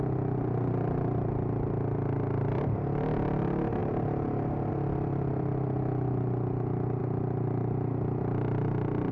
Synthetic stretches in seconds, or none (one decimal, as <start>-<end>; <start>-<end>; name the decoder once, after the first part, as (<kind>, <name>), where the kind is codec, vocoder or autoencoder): 3.8-4.7 (vocoder, BigVGAN v2)